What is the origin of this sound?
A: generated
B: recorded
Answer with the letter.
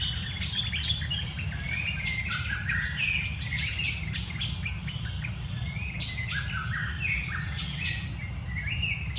B